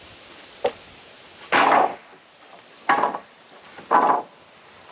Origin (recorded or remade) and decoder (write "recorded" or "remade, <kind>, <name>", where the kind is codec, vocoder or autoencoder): recorded